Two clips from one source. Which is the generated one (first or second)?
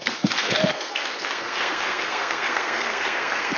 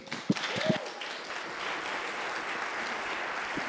first